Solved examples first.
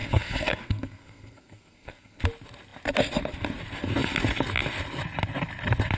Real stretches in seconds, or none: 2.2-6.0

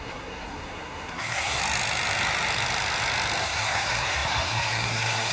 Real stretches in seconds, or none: 1.6-3.4

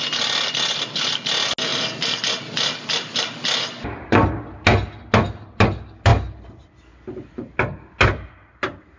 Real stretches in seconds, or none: 0.0-9.0

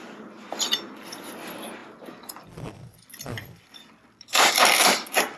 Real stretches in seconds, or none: 0.0-5.4